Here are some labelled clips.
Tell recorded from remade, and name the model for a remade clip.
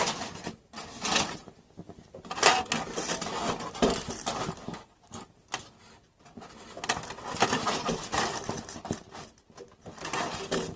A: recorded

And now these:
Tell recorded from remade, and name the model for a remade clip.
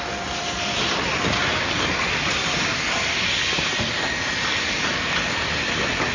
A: recorded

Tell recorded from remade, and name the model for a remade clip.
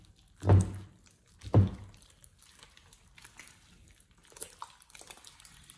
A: recorded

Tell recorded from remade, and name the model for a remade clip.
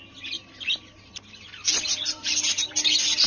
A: recorded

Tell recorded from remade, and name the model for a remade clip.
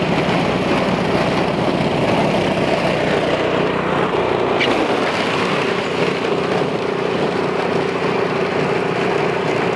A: recorded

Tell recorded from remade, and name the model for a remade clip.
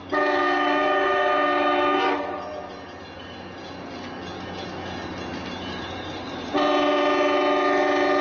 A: recorded